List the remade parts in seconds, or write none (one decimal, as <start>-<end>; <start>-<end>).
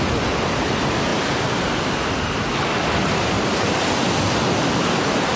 1.1-3.8